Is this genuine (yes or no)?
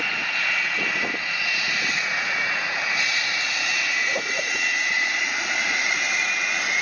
no